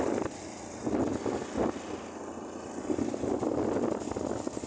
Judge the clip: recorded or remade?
recorded